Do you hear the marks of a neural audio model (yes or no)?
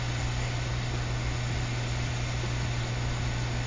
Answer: no